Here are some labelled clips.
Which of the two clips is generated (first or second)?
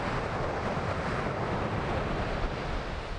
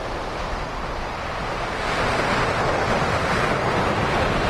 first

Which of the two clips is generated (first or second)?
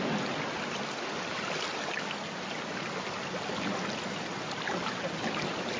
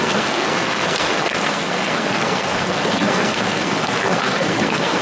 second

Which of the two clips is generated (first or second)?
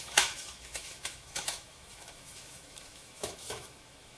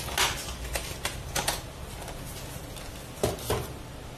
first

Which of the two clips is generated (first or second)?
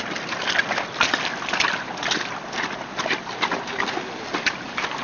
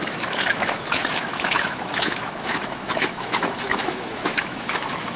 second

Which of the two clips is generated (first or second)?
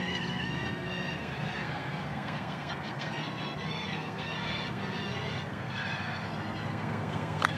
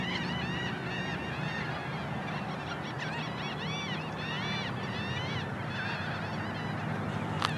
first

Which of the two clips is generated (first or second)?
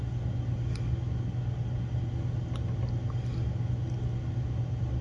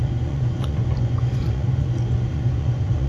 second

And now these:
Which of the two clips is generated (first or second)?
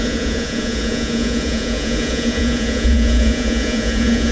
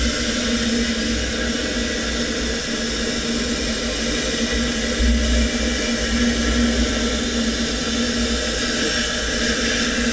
first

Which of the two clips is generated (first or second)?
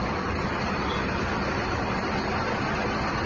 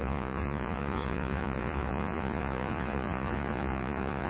second